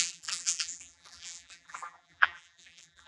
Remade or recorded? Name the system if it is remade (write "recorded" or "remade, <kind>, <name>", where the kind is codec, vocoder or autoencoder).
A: remade, vocoder, BigVGAN v2